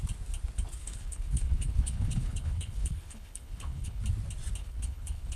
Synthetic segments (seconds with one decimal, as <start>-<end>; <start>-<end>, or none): 0.8-4.0; 4.6-5.4